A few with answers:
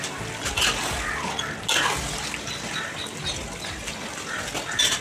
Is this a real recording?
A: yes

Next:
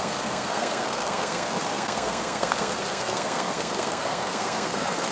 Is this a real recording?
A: no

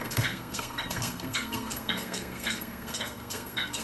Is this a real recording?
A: no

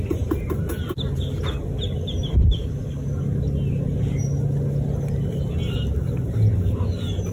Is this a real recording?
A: yes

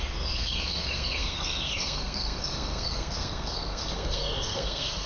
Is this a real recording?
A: no